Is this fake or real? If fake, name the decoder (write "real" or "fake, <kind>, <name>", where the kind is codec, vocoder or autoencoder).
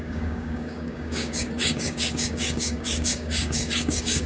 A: fake, codec, DAC